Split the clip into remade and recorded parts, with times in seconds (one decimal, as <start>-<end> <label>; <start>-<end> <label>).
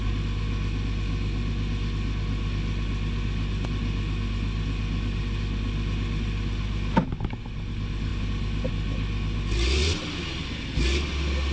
0.0-11.5 recorded